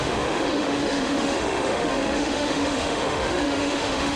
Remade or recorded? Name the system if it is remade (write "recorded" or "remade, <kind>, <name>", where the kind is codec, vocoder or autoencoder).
remade, autoencoder, DAC-VAE